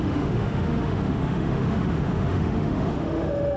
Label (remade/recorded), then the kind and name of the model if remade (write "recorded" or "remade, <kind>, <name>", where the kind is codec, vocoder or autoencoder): remade, autoencoder, DAC-VAE